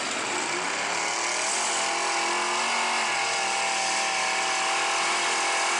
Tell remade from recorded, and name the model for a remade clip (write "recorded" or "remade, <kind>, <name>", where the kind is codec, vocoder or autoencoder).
recorded